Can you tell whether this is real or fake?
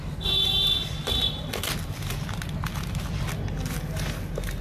real